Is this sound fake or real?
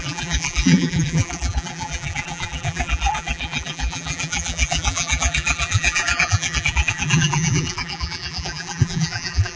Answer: fake